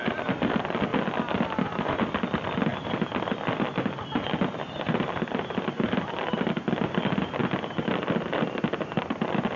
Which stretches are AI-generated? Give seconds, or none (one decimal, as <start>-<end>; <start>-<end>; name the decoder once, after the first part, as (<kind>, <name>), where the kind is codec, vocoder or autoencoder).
none